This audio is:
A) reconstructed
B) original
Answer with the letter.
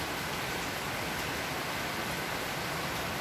B